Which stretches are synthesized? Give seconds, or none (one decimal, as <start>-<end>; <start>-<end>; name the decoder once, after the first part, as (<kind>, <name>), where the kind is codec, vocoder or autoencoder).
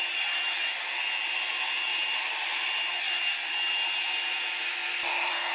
1.9-2.7 (vocoder, BigVGAN v2); 4.8-5.5